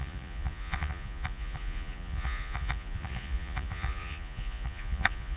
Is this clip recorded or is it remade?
remade